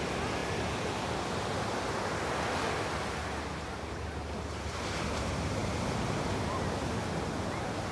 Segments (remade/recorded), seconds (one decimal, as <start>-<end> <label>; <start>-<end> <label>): 0.0-7.9 recorded